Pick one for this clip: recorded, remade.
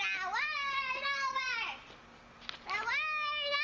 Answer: recorded